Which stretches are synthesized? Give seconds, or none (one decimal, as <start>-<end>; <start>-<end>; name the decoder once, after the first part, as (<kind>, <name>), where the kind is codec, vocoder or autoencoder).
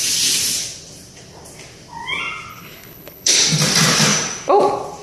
2.5-3.4 (codec, HILCodec)